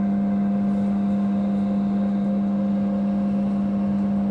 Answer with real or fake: real